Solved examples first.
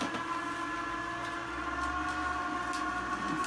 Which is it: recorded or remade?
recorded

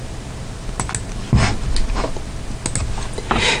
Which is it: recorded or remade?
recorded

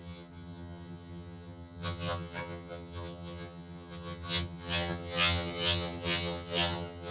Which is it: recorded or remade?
remade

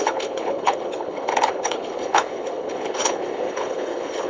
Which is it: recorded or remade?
remade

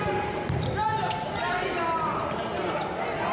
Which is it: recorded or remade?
recorded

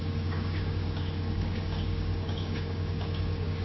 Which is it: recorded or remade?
remade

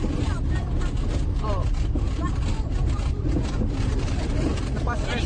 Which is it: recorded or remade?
recorded